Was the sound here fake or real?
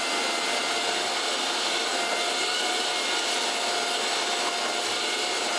real